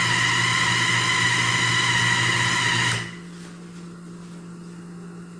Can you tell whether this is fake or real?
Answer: real